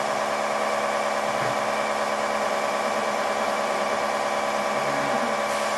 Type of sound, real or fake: real